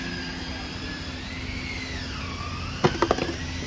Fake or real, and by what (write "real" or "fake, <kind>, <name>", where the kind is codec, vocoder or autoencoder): real